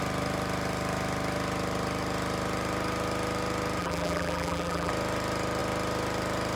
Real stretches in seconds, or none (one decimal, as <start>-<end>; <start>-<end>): 0.0-3.8; 4.9-6.6